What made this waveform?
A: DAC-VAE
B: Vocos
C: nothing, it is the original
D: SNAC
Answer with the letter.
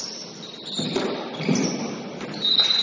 C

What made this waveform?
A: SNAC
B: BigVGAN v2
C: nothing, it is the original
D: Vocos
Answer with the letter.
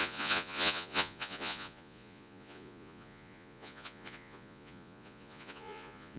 D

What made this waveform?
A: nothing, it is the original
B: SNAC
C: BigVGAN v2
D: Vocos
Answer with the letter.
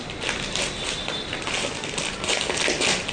A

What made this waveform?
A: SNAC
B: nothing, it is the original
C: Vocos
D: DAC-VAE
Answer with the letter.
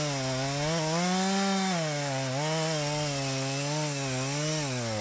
B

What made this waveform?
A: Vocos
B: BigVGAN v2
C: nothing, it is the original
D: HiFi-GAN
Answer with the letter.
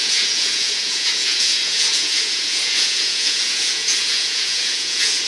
A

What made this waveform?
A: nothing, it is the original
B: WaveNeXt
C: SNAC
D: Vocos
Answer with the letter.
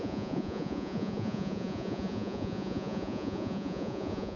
D